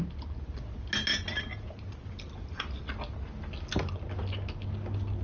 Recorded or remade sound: recorded